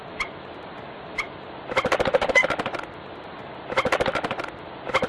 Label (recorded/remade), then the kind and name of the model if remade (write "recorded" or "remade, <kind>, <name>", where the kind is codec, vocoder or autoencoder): recorded